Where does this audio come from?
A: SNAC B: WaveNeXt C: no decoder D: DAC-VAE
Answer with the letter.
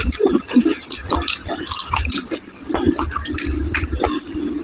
C